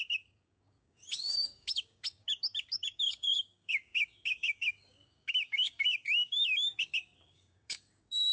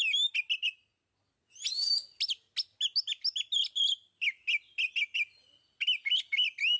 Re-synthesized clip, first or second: first